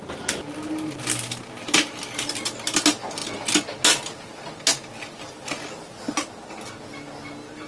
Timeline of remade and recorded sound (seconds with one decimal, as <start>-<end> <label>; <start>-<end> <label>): 0.0-7.7 recorded